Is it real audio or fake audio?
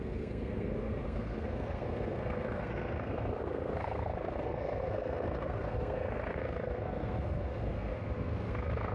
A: fake